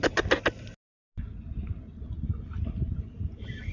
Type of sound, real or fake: real